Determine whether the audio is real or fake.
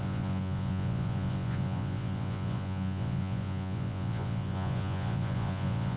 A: fake